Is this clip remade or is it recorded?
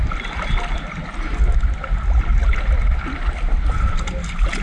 recorded